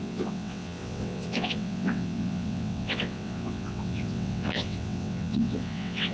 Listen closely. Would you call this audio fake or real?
fake